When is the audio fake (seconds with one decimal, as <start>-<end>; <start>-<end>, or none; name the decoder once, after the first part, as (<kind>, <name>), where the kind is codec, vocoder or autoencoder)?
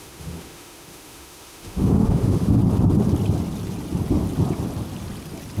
0.0-2.6 (autoencoder, DAC-VAE)